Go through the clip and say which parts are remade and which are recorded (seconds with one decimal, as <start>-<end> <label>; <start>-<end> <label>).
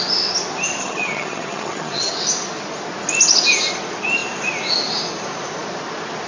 0.0-0.8 recorded; 0.8-2.1 remade; 2.1-6.3 recorded